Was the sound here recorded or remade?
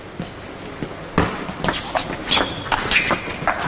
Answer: recorded